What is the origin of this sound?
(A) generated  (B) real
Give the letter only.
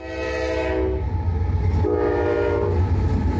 B